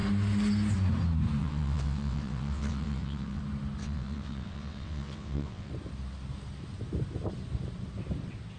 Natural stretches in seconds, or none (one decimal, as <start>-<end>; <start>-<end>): 0.0-1.4; 3.4-3.8; 5.7-8.6